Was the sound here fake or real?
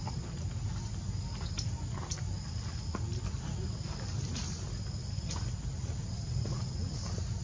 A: real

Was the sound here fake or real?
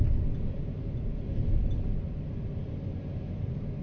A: real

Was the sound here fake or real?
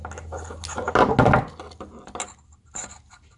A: real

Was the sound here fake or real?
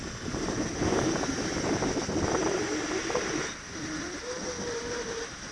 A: real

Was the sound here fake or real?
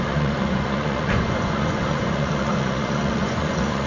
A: fake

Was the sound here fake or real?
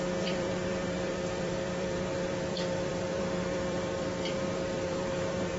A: fake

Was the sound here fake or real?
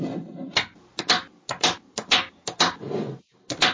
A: real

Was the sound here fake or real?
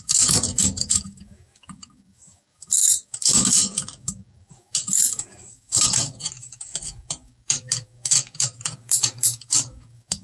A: fake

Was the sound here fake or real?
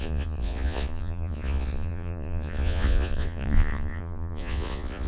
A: fake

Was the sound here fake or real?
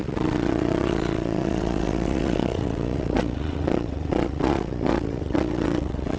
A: fake